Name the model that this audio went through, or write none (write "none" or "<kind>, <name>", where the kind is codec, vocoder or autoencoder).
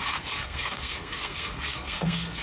codec, SNAC